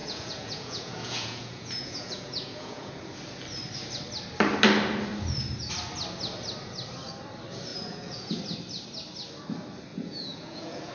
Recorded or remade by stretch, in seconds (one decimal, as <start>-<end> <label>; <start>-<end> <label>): 0.0-2.9 remade; 2.9-7.7 recorded; 7.7-8.4 remade; 8.4-9.9 recorded; 9.9-10.9 remade